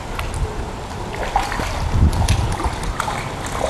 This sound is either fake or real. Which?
real